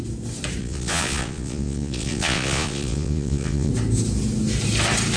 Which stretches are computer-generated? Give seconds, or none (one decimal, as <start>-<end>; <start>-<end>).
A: 0.6-3.7